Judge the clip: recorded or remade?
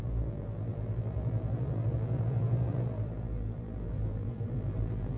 remade